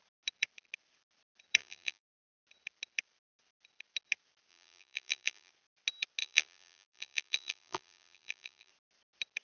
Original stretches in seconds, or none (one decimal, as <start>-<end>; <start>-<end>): 0.0-1.6; 2.4-4.5; 5.5-6.2; 8.7-9.4